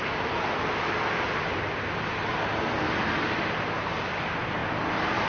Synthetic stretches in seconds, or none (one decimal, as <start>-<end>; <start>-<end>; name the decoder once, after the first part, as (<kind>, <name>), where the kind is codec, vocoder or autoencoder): none